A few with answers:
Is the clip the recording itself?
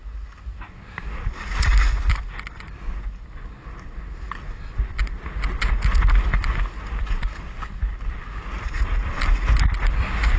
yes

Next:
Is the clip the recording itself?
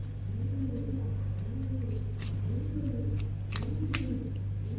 yes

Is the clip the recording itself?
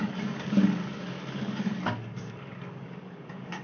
no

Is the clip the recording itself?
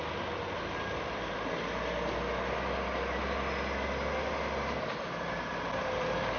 yes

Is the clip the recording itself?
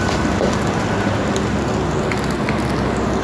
yes